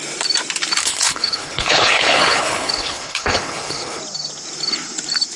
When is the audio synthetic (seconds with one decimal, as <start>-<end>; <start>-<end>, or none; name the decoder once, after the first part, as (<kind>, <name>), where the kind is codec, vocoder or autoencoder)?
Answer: 0.8-4.0 (codec, HILCodec)